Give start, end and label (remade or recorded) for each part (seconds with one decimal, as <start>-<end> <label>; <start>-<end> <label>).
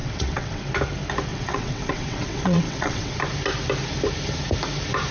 0.0-0.6 remade; 0.6-1.3 recorded; 1.3-3.2 remade; 3.2-5.1 recorded